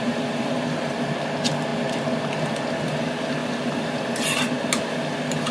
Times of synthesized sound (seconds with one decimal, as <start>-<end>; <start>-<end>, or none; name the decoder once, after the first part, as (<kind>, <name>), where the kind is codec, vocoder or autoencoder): none